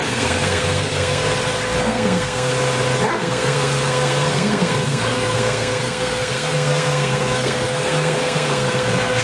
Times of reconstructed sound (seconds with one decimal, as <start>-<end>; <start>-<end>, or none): 0.0-1.2; 1.8-2.5; 3.2-9.2